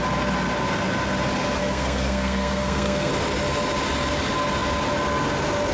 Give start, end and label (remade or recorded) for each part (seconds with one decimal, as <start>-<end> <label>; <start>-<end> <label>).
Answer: 0.0-1.6 recorded; 1.6-3.1 remade; 3.1-5.7 recorded

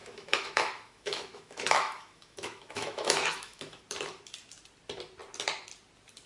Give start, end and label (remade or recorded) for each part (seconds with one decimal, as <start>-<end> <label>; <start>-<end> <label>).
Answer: 0.0-3.8 remade; 3.8-6.3 recorded